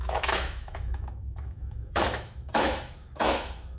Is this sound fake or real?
fake